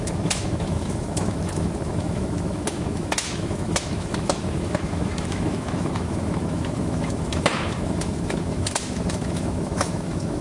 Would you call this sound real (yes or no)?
no